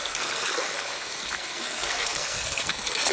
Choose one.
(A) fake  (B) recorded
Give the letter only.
A